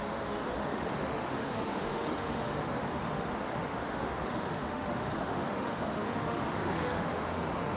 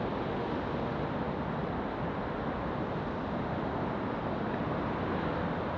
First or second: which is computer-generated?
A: first